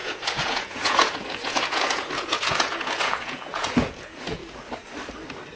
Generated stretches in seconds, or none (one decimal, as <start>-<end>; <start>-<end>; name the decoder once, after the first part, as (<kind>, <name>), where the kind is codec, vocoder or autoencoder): 0.0-4.4 (vocoder, Vocos)